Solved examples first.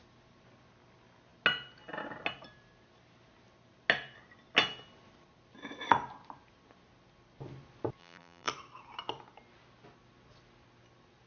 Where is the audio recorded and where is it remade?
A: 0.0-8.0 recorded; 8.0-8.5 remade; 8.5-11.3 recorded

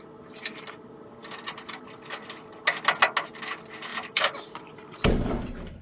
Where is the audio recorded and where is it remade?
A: 0.0-3.9 recorded; 3.9-5.8 remade

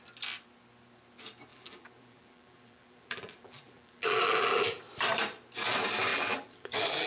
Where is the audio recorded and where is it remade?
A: 0.0-1.5 recorded; 1.5-4.8 remade; 4.8-6.1 recorded; 6.1-7.1 remade

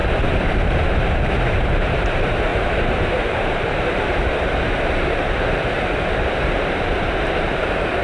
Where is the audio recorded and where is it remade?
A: 0.0-0.7 recorded; 0.7-8.0 remade